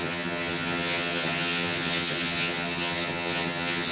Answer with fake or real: fake